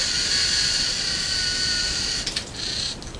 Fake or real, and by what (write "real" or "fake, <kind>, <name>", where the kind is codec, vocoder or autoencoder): fake, vocoder, BigVGAN v2